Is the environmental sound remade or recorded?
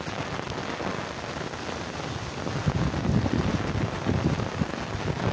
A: recorded